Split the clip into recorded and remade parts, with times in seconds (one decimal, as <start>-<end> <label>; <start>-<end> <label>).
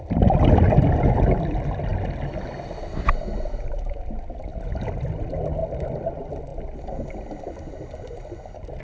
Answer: 0.0-8.8 recorded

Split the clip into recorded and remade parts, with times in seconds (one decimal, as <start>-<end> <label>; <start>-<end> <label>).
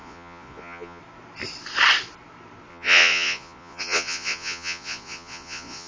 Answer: 0.0-1.0 remade; 1.0-2.7 recorded; 2.7-5.9 remade